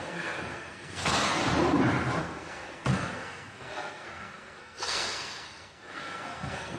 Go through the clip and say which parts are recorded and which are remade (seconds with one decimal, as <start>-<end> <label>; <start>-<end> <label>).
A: 0.0-1.4 remade; 1.4-2.2 recorded; 2.2-6.8 remade